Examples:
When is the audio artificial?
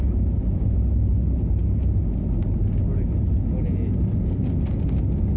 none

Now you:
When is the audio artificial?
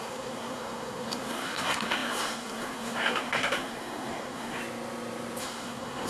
0.0-4.6 (codec, SNAC); 5.4-6.1